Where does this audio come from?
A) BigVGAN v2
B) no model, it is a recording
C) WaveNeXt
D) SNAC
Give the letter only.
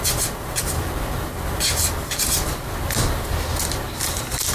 B